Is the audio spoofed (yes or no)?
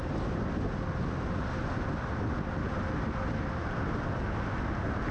no